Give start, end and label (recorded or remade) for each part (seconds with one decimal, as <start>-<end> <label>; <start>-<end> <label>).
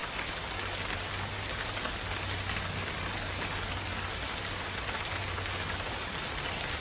0.0-6.8 recorded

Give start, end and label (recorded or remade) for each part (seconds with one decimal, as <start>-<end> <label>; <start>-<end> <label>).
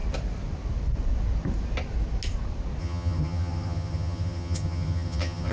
0.0-2.8 recorded; 2.8-5.5 remade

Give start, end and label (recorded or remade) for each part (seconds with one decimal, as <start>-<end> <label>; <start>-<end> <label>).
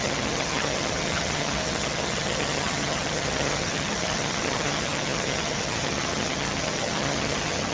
0.0-7.7 remade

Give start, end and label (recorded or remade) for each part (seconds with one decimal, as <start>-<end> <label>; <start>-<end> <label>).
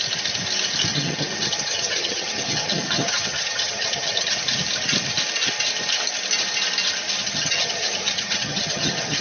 0.0-0.9 recorded; 0.9-4.4 remade; 4.4-7.2 recorded; 7.2-9.2 remade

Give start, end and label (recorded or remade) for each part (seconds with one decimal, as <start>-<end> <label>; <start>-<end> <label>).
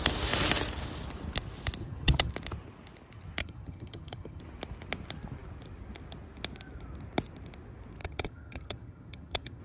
0.0-1.8 recorded; 1.8-2.3 remade; 2.3-3.4 recorded; 3.4-4.4 remade; 4.4-8.0 recorded; 8.0-9.6 remade